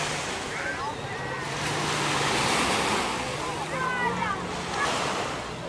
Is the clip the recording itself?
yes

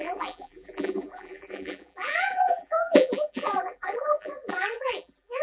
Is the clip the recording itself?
no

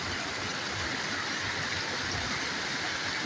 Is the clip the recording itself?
yes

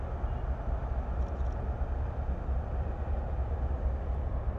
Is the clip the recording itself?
yes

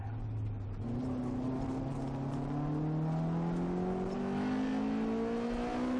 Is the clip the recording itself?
yes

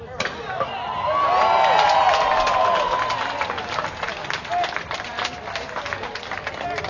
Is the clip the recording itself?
yes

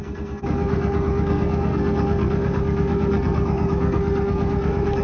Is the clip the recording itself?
no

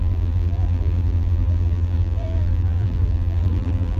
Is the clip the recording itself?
no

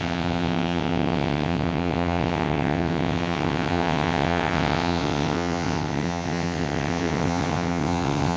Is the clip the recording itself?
no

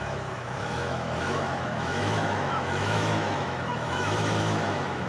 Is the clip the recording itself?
no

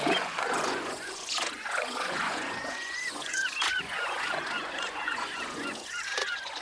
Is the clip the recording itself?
no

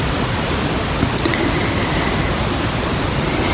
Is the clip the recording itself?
yes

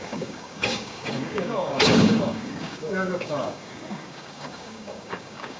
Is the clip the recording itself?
no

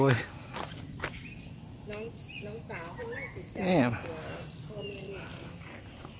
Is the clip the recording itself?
yes